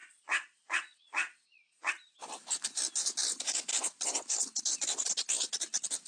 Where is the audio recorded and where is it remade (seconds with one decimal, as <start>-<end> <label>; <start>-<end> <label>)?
0.0-1.9 remade; 1.9-6.1 recorded